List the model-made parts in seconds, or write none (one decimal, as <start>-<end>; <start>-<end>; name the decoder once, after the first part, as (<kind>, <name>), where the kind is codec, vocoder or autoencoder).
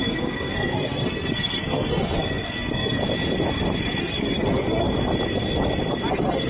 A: 0.0-3.0 (codec, SNAC); 4.0-4.9; 6.1-6.5